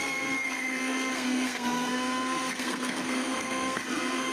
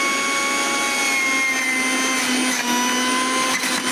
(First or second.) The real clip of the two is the second